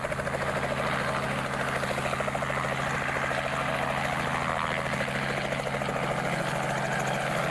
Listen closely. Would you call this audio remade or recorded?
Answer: recorded